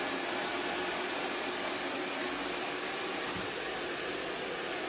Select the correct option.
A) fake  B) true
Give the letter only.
B